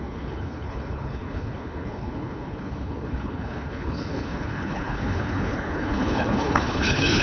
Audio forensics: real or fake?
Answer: fake